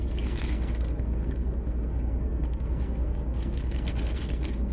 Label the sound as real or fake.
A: fake